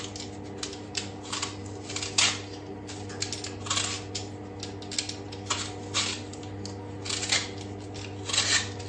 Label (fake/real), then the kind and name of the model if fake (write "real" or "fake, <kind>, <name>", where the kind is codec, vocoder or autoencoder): real